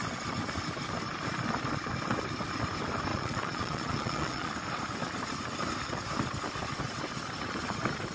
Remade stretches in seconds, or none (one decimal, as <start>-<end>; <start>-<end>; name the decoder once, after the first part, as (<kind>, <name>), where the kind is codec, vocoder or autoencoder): 3.1-4.5 (vocoder, Vocos)

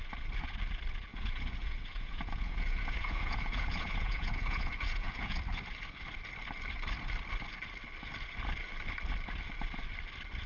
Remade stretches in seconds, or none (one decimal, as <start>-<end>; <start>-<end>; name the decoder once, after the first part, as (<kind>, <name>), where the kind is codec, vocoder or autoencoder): 1.1-5.4 (vocoder, Vocos)

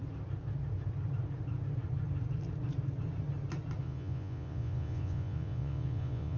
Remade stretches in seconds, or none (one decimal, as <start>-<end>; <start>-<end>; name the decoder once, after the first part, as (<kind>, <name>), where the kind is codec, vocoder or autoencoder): 3.8-6.4 (vocoder, Vocos)

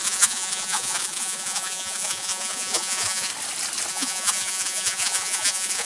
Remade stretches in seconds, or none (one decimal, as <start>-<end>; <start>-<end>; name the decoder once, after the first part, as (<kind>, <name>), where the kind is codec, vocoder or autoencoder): 0.0-3.3 (vocoder, Vocos); 3.9-5.9

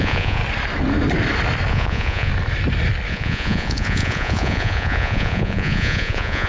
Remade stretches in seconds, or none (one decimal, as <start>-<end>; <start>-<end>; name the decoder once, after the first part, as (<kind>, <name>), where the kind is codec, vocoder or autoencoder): 0.0-0.4 (vocoder, Vocos); 1.7-2.3; 3.1-6.5

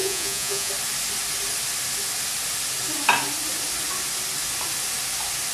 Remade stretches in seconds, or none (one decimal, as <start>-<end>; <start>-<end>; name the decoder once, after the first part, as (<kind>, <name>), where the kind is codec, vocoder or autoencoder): 0.0-0.7 (vocoder, Vocos)

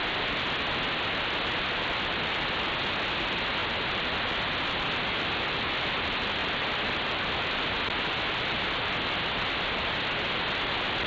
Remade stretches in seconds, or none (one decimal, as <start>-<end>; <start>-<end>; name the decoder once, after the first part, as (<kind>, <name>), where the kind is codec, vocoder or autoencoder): none